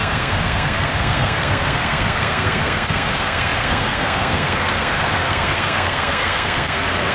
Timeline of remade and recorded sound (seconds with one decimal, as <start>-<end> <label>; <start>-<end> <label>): 0.0-7.1 remade